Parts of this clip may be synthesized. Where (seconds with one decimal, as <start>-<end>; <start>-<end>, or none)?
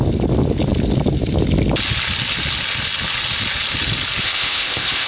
4.2-5.1